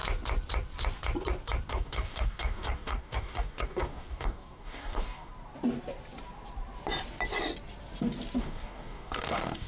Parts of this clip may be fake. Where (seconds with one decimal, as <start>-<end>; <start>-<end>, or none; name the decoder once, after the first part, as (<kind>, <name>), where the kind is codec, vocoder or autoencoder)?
1.7-5.3 (codec, DAC); 8.4-9.7